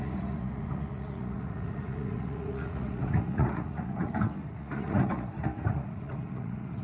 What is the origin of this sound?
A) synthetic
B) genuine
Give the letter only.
A